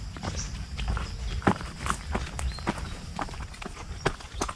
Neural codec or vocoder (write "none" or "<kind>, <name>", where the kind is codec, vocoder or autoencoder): none